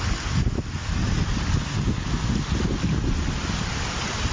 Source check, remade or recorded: recorded